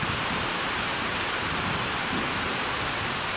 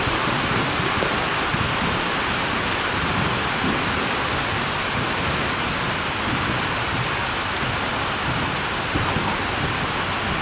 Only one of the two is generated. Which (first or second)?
first